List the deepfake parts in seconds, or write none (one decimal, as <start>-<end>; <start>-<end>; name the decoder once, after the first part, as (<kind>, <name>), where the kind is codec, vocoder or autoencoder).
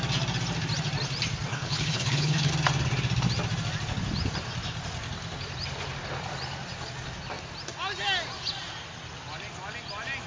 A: 1.5-2.5 (codec, HILCodec)